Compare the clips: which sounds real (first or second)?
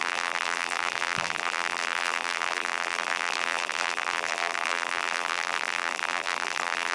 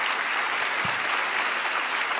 second